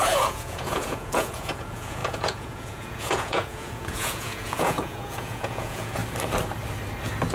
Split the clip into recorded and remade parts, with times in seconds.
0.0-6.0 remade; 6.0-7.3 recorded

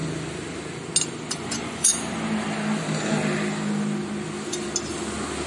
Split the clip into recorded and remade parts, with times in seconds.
0.0-1.3 recorded; 1.3-1.9 remade; 1.9-5.5 recorded

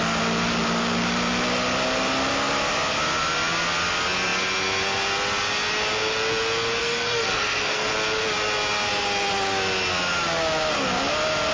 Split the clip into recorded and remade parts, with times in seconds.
0.0-6.8 recorded; 6.8-7.9 remade; 7.9-11.5 recorded

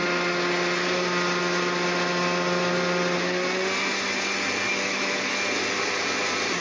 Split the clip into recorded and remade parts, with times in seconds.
0.0-4.7 recorded; 4.7-5.3 remade; 5.3-6.6 recorded

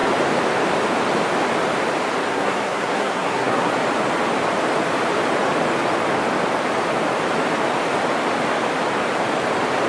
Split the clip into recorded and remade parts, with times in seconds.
0.0-2.3 recorded; 2.3-3.7 remade; 3.7-9.9 recorded

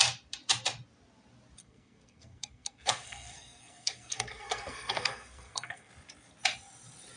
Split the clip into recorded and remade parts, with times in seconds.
0.0-1.6 recorded; 1.6-5.9 remade; 5.9-7.2 recorded